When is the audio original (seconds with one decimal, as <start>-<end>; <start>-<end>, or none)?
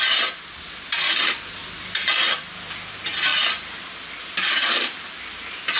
0.0-5.8